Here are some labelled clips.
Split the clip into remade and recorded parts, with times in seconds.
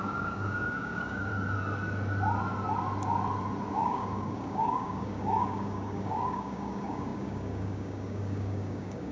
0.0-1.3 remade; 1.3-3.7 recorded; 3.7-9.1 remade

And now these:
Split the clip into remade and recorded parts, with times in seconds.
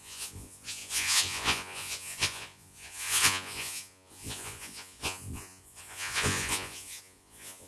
0.0-7.7 remade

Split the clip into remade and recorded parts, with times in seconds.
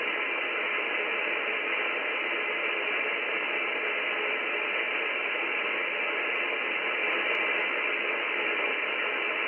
0.0-9.5 recorded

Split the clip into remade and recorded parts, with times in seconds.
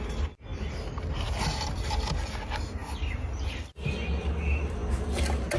0.0-0.5 recorded; 0.5-1.6 remade; 1.6-5.6 recorded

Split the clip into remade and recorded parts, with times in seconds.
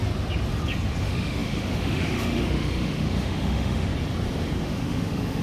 0.0-1.0 recorded; 1.0-3.9 remade; 3.9-4.6 recorded; 4.6-5.4 remade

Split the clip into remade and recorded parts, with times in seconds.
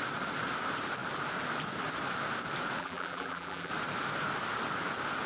0.0-2.8 recorded; 2.8-3.7 remade; 3.7-5.3 recorded